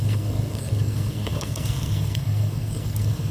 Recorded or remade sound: remade